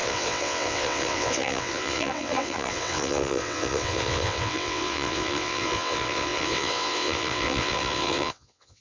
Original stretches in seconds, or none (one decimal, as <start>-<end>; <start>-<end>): none